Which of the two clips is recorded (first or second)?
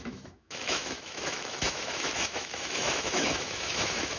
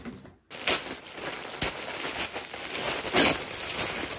second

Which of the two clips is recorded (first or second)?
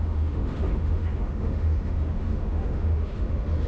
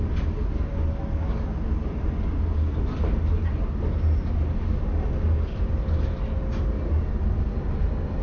second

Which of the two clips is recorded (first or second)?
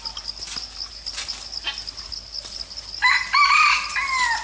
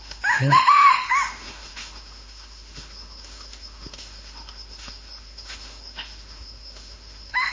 first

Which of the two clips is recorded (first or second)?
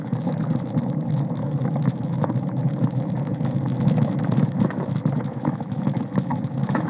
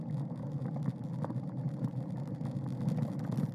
second